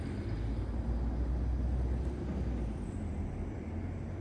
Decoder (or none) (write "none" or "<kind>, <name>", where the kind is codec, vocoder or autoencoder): none